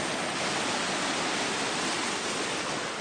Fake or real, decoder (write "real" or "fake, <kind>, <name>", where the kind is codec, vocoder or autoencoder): real